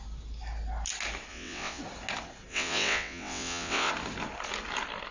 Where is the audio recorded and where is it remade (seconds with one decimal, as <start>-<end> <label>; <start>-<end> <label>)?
0.0-1.3 recorded; 1.3-1.8 remade; 1.8-2.5 recorded; 2.5-3.9 remade; 3.9-5.1 recorded